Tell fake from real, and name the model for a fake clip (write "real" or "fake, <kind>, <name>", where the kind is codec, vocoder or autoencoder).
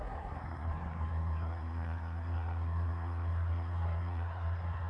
fake, codec, SNAC